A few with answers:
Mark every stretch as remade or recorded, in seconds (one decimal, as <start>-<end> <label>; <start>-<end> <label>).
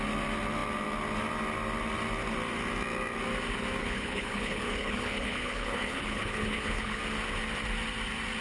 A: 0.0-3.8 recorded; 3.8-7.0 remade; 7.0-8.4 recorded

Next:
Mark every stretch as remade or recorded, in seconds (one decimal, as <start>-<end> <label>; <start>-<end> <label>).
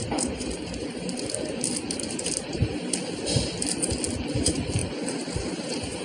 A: 0.0-2.6 remade; 2.6-4.3 recorded; 4.3-6.0 remade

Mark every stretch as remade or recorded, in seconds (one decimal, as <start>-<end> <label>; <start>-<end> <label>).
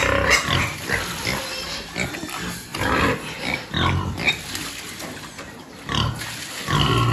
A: 0.0-7.1 recorded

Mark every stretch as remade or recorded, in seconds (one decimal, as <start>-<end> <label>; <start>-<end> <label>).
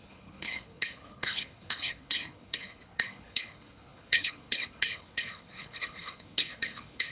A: 0.0-7.1 remade